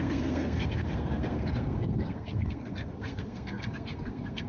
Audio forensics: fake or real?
fake